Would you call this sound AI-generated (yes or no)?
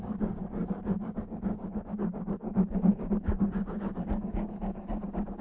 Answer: yes